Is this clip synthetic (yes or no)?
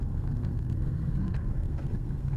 yes